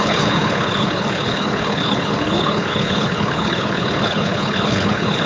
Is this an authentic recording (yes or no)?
no